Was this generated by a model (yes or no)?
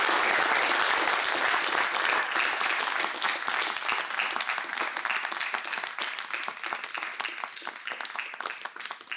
no